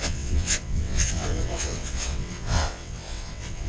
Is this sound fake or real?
fake